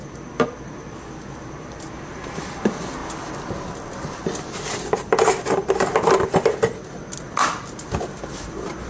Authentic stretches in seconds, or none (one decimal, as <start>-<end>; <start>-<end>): 0.0-8.9